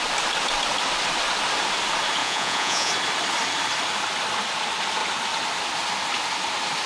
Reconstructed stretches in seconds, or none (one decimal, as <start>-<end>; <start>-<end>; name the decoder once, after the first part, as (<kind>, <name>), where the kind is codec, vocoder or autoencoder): 2.2-2.9 (vocoder, Vocos)